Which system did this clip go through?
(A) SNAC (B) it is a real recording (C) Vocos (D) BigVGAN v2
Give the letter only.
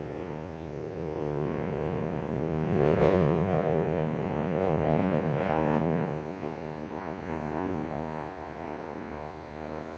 C